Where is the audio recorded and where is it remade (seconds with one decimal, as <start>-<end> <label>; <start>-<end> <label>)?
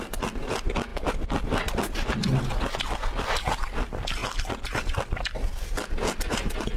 0.0-6.8 recorded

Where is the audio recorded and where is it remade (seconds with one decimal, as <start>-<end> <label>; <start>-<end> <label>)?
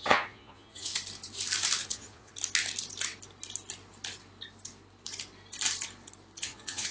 0.0-0.9 remade; 0.9-1.8 recorded; 1.8-2.3 remade; 2.3-6.4 recorded; 6.4-6.9 remade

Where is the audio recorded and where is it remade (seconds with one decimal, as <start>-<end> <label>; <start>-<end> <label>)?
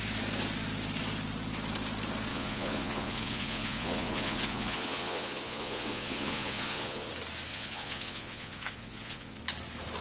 0.0-2.3 recorded; 2.3-7.1 remade; 7.1-7.5 recorded; 7.5-9.4 remade; 9.4-10.0 recorded